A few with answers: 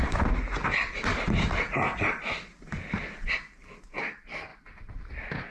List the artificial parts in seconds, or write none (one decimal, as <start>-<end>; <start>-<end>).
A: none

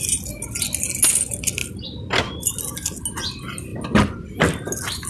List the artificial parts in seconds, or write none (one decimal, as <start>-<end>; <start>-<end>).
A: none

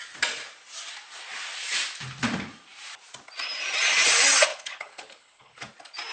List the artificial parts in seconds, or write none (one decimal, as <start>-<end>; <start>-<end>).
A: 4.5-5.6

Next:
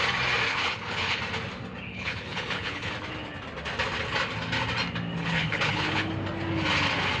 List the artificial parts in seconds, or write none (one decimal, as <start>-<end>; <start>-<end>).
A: 0.5-1.2; 1.9-2.9; 5.2-6.1